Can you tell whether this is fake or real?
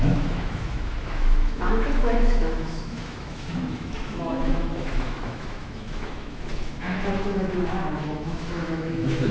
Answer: fake